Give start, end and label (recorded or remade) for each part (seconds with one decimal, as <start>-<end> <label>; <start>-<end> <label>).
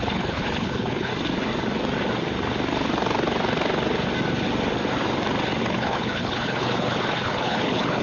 0.0-1.1 remade; 1.1-5.6 recorded; 5.6-8.0 remade